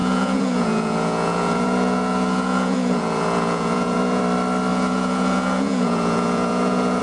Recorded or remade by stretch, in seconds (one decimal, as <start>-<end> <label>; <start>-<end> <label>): 0.0-4.2 remade; 4.2-4.7 recorded; 4.7-7.0 remade